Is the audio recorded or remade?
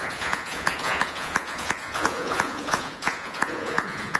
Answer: remade